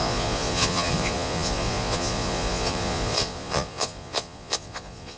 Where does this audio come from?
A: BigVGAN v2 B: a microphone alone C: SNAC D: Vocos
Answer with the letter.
D